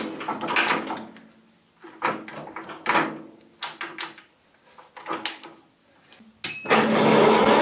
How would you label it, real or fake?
real